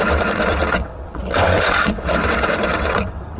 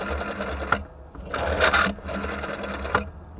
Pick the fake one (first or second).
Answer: first